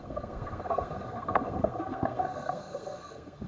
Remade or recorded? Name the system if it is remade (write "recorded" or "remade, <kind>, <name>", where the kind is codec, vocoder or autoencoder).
remade, codec, SNAC